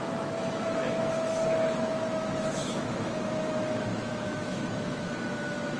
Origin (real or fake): fake